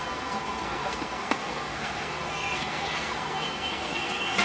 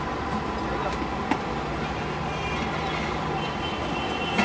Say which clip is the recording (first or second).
second